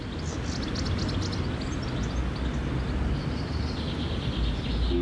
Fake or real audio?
real